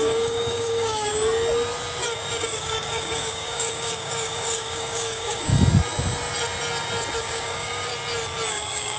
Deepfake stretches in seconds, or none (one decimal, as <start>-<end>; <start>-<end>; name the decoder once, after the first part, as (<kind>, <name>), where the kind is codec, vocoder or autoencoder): 0.0-1.1 (codec, DAC); 2.4-5.5; 7.2-7.9; 8.5-9.0

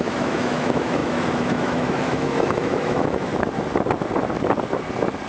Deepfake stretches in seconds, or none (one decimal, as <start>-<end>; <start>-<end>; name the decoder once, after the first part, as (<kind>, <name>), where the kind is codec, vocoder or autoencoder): 0.0-3.3 (autoencoder, DAC-VAE)

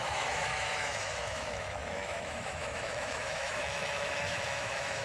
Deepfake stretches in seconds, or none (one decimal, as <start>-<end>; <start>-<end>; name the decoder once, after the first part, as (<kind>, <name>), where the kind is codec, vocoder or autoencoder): 0.0-5.0 (autoencoder, DAC-VAE)

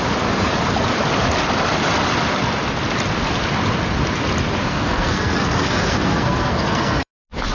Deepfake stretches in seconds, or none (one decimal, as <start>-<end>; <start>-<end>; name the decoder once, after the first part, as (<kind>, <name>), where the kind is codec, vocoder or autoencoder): 4.6-7.1 (codec, SNAC)

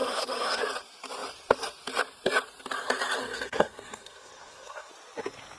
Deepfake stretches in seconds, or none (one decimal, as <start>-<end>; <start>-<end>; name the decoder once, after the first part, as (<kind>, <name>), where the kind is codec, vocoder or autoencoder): 0.0-0.6 (codec, SNAC); 3.2-4.9

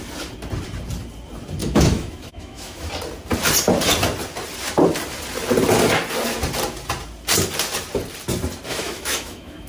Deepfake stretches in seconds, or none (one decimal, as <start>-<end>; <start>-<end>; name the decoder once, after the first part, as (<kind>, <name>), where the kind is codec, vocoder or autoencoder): 1.6-2.9 (autoencoder, DAC-VAE); 8.7-9.7

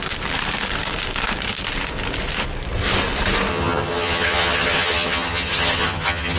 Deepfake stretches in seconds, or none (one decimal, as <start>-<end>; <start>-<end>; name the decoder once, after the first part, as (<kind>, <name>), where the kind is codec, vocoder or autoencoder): 3.5-6.4 (vocoder, HiFi-GAN)